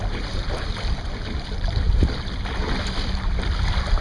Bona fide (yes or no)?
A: yes